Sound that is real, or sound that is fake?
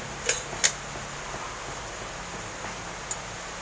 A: real